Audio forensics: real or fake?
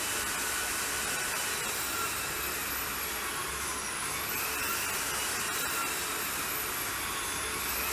real